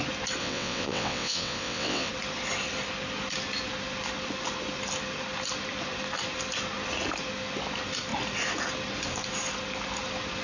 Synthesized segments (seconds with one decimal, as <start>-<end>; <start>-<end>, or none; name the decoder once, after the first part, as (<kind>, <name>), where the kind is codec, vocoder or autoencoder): 0.4-2.1 (vocoder, WaveNeXt)